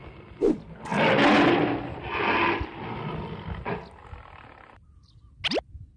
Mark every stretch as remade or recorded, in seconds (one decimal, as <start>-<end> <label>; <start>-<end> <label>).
0.0-6.0 recorded